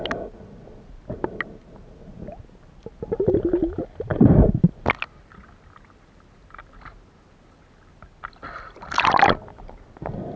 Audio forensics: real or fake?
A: real